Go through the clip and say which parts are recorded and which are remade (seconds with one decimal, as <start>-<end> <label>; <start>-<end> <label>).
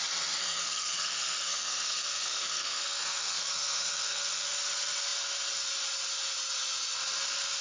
0.0-0.4 recorded; 0.4-4.5 remade; 4.5-7.6 recorded